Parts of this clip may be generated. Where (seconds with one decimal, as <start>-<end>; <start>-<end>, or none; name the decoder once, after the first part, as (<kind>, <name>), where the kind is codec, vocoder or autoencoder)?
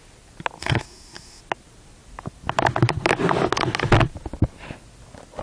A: 0.6-1.4 (codec, SNAC)